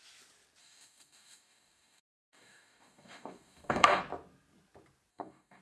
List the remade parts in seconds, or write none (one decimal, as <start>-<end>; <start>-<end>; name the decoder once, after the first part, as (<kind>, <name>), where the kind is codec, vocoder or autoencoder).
0.6-4.0 (codec, DAC); 5.1-5.6